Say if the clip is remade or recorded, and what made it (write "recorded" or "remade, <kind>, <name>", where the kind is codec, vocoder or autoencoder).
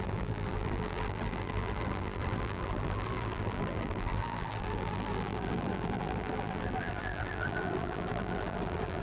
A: remade, vocoder, BigVGAN v2